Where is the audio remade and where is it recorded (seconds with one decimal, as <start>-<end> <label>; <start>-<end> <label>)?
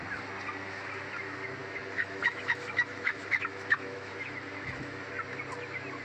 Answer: 0.0-1.6 recorded; 1.6-5.1 remade; 5.1-6.0 recorded